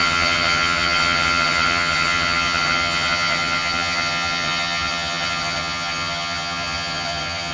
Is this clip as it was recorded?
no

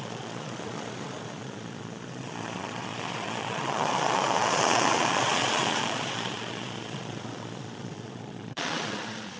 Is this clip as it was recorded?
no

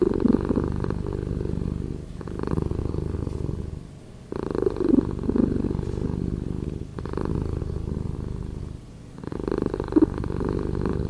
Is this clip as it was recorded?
yes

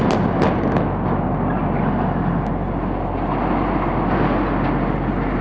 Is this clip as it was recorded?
yes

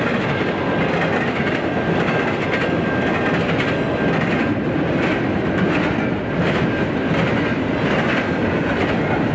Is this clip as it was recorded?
yes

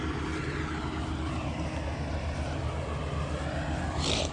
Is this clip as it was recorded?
yes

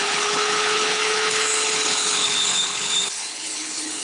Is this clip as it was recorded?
no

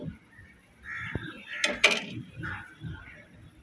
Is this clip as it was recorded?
yes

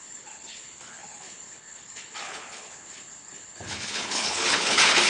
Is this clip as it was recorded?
no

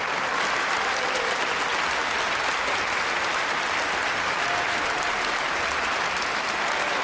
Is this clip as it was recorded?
yes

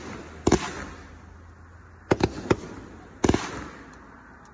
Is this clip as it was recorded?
yes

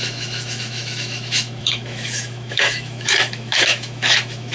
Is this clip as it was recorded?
no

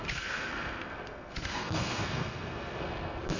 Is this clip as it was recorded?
no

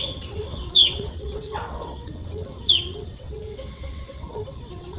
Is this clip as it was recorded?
no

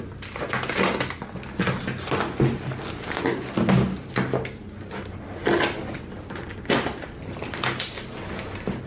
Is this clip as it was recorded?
yes